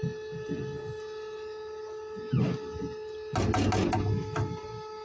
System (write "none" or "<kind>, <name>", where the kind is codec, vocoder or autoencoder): none